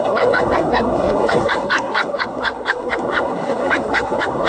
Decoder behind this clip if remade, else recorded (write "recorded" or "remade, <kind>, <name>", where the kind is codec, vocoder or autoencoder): remade, codec, SNAC